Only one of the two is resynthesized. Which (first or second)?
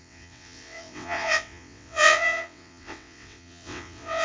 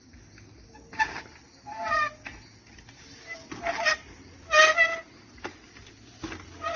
first